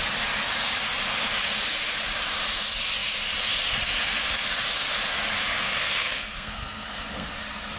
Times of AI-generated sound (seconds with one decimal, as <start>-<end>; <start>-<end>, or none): 5.6-7.3